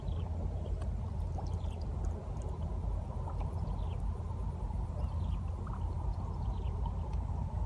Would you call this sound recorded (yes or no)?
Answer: yes